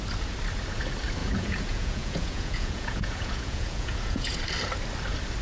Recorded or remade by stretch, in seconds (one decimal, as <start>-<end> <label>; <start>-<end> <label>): 0.0-1.2 recorded; 1.2-4.4 remade; 4.4-5.4 recorded